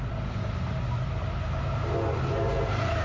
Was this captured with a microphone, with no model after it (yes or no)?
yes